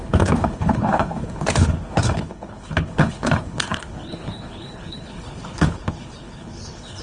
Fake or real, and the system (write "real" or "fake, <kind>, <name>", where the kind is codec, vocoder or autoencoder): fake, codec, HILCodec